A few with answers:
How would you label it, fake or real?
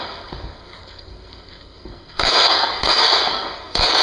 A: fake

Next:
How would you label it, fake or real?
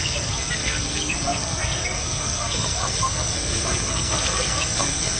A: fake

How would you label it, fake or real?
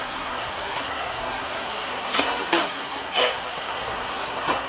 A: fake